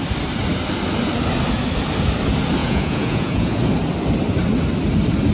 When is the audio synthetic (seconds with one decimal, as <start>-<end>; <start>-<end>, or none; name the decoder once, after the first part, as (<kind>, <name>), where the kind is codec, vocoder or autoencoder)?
2.6-3.6 (vocoder, Vocos)